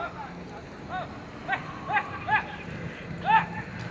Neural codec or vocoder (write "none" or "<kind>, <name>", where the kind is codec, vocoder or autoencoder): none